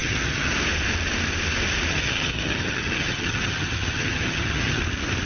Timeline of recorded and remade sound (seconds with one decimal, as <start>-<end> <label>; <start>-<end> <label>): 0.0-0.5 remade; 0.5-1.9 recorded; 1.9-4.8 remade; 4.8-5.3 recorded